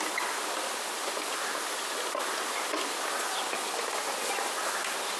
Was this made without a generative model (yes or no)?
yes